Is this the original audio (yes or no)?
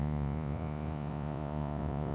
no